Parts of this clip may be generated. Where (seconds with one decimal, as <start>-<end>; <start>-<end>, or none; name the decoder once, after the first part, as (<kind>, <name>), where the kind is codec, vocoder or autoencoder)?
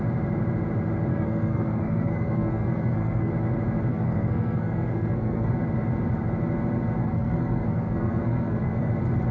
1.1-3.3 (codec, SNAC); 3.9-5.5; 7.0-8.9